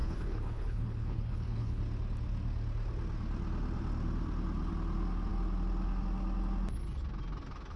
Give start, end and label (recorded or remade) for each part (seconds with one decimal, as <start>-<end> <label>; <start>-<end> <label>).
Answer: 0.0-1.8 remade; 1.8-7.8 recorded